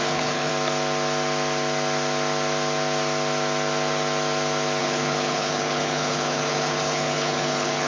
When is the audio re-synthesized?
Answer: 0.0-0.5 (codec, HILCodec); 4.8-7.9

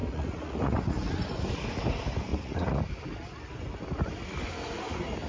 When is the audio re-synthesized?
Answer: 0.0-0.9 (vocoder, Vocos); 2.3-2.8

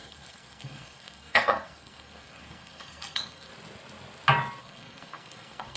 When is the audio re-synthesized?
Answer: 0.0-3.5 (codec, SNAC); 4.6-5.8

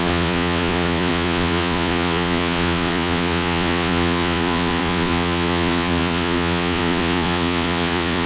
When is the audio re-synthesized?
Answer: 0.0-8.3 (vocoder, Vocos)

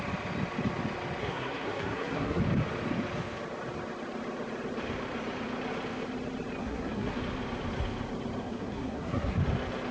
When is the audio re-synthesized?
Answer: 1.2-2.4 (codec, SNAC); 6.6-7.2; 8.4-9.4

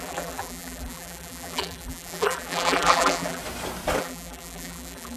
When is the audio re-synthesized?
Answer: 0.0-3.4 (vocoder, BigVGAN v2); 4.0-5.2

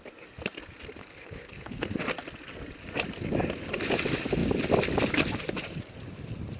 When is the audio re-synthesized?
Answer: 1.0-2.0 (codec, HILCodec)

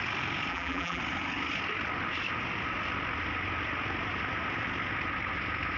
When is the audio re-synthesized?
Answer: 0.5-1.0 (vocoder, BigVGAN v2)